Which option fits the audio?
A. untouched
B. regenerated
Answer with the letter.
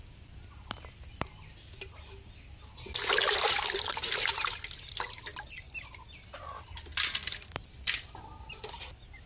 A